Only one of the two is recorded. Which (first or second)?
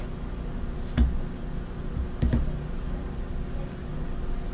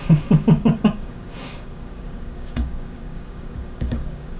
first